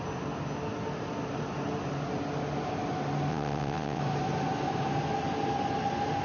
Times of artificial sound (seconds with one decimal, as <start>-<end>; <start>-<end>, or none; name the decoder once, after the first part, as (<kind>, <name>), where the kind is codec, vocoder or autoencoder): 3.3-4.0 (vocoder, WaveNeXt)